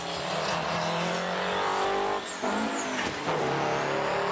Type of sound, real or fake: real